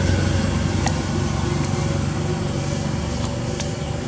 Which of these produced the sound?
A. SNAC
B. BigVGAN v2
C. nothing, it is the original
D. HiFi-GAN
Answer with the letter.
C